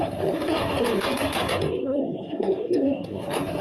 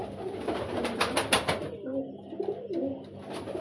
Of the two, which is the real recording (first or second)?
second